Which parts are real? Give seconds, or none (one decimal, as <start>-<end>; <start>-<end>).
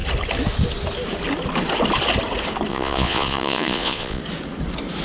0.0-2.7; 4.2-5.0